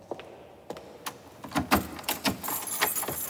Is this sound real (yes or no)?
yes